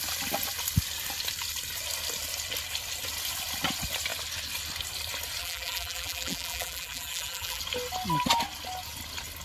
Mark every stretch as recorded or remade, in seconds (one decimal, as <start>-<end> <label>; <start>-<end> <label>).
0.0-5.4 recorded; 5.4-7.6 remade; 7.6-9.4 recorded